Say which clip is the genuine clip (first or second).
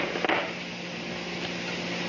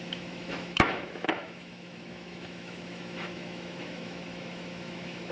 first